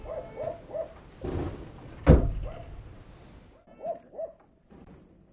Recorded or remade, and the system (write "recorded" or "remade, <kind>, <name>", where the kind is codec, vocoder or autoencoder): recorded